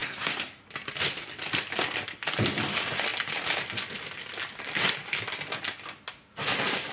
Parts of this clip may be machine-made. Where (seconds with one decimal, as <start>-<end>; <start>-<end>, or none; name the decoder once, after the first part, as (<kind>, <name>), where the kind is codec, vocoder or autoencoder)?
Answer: 0.0-0.6 (codec, SNAC)